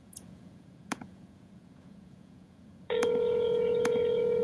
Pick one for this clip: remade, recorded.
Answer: remade